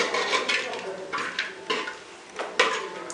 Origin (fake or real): real